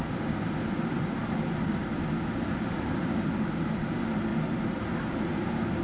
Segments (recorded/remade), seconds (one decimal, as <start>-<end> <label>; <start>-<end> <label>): 0.0-1.8 remade; 1.8-2.5 recorded; 2.5-4.3 remade; 4.3-5.8 recorded